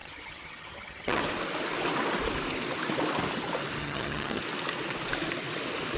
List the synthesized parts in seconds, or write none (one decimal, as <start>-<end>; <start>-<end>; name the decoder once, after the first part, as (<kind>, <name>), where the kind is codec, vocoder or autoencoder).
0.0-1.2 (vocoder, HiFi-GAN); 3.8-4.4